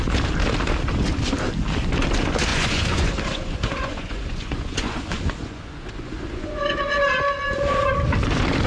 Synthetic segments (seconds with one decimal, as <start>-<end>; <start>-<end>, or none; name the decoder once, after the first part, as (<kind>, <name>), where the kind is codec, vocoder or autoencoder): 2.5-6.8 (vocoder, Vocos)